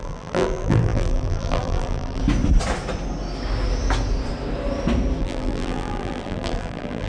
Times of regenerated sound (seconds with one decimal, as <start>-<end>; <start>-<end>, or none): 0.0-2.2; 5.2-7.1